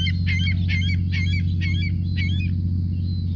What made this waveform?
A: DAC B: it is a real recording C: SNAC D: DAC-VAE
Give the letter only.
B